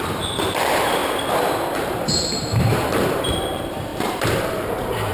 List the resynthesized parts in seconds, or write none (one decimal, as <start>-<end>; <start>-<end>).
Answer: 0.0-1.0; 1.8-5.1